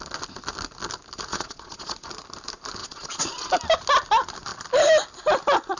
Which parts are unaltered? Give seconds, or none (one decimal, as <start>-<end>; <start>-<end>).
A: 0.0-1.3; 2.1-2.8; 3.5-5.8